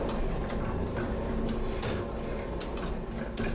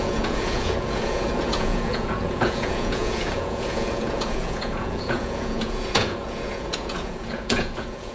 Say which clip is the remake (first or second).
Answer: second